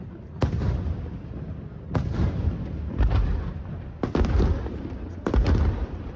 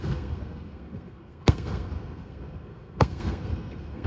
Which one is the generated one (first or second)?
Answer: second